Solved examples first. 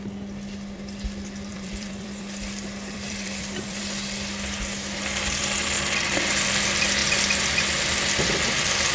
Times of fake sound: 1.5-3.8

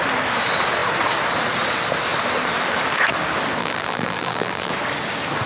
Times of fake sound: 3.6-4.7

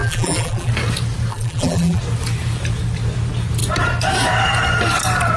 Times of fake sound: 0.0-0.7; 1.3-2.0